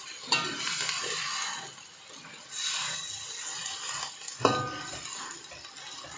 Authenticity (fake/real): real